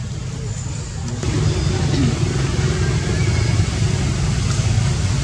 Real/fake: real